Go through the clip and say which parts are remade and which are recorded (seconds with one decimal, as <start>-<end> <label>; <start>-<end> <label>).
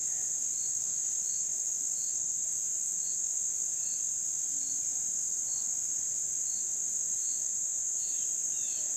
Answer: 0.0-0.7 recorded; 0.7-3.6 remade; 3.6-7.2 recorded; 7.2-8.2 remade; 8.2-9.0 recorded